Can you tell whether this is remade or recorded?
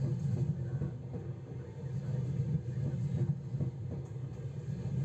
recorded